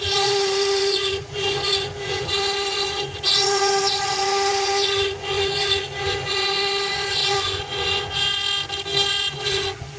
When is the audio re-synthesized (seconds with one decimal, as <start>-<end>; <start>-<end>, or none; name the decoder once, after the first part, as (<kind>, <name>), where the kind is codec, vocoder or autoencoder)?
0.0-8.4 (vocoder, Vocos); 9.1-10.0